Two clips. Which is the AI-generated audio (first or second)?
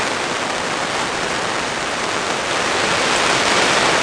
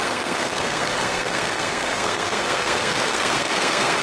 second